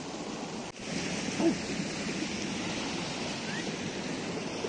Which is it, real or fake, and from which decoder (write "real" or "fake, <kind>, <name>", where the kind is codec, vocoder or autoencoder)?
real